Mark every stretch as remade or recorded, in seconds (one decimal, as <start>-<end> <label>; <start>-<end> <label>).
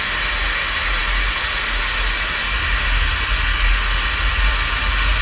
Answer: 0.0-5.2 recorded